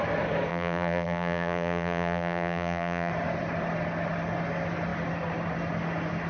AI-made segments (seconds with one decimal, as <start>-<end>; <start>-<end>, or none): 0.5-3.1